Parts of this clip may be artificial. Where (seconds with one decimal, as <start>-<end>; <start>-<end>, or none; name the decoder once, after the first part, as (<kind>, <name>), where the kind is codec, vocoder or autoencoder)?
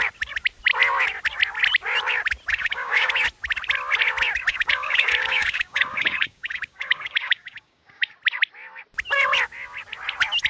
2.5-3.1 (codec, DAC); 4.5-8.2